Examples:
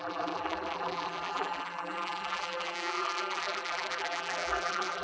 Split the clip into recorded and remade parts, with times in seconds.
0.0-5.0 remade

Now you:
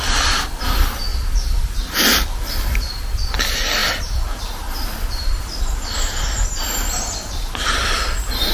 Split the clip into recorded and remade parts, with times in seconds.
0.0-1.1 recorded; 1.1-2.5 remade; 2.5-3.8 recorded; 3.8-7.8 remade; 7.8-8.5 recorded

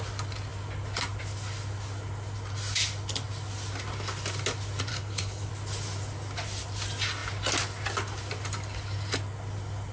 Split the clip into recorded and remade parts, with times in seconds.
0.0-4.9 recorded; 4.9-5.5 remade; 5.5-9.9 recorded

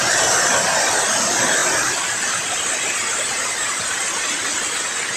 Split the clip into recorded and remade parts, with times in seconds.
0.0-5.2 recorded

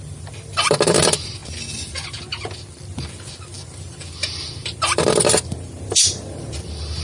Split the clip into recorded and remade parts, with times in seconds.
0.0-1.4 remade; 1.4-3.1 recorded; 3.1-7.0 remade